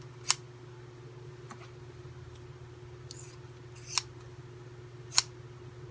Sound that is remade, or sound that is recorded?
recorded